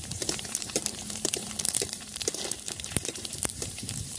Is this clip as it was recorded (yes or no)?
no